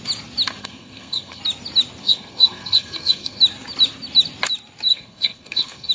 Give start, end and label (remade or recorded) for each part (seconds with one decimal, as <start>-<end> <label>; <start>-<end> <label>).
0.0-0.6 recorded; 0.6-1.4 remade; 1.4-2.0 recorded; 2.0-3.4 remade; 3.4-4.9 recorded; 4.9-5.9 remade